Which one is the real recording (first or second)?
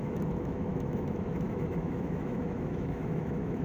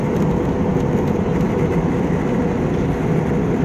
second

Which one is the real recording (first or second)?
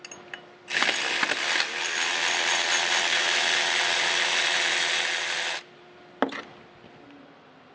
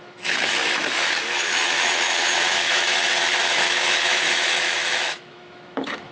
first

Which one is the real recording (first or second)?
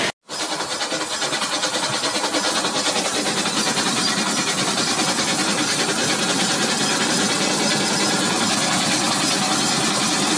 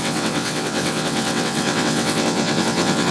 first